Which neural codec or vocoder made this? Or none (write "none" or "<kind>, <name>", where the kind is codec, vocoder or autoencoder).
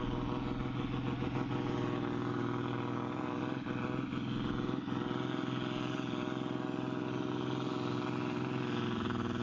none